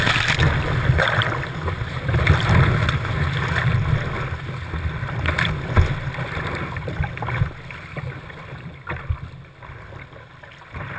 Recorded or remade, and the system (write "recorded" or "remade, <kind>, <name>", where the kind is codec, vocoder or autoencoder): recorded